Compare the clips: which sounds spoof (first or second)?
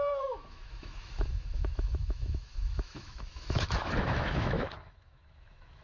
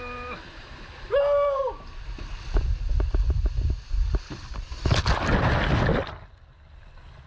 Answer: first